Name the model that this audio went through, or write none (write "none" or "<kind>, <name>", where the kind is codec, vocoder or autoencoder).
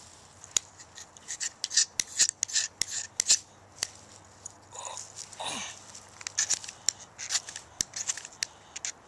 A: none